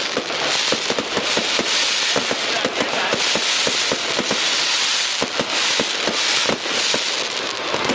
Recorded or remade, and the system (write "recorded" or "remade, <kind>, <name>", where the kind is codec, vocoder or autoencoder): recorded